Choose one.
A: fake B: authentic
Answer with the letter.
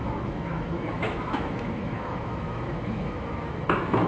A